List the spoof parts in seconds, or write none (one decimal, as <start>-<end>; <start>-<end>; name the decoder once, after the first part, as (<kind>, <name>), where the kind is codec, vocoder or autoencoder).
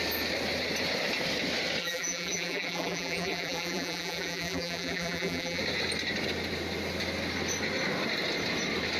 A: 1.8-5.6 (vocoder, BigVGAN v2)